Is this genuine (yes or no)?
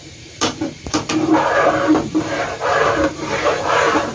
no